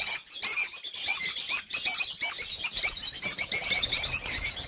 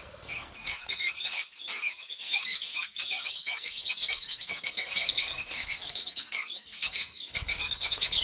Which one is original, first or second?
first